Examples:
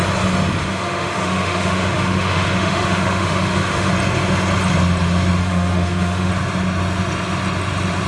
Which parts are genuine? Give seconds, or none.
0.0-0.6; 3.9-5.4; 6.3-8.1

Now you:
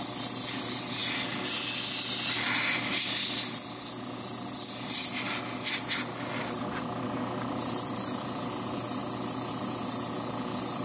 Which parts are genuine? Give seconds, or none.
0.0-10.8

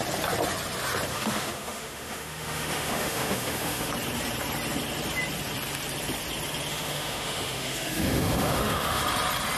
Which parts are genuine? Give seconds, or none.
0.0-1.1; 3.9-6.7; 9.0-9.6

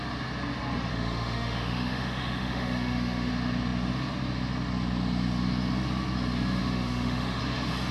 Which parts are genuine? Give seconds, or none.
0.0-0.9; 3.3-6.6; 7.4-7.9

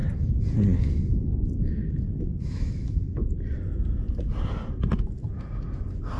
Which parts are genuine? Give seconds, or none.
0.0-2.4; 3.0-6.2

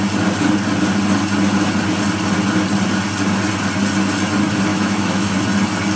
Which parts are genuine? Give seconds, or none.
0.0-4.7; 5.3-6.0

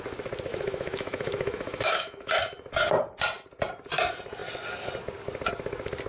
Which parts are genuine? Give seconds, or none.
0.0-0.5; 2.3-6.1